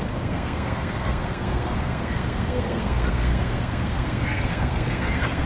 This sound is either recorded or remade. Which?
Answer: remade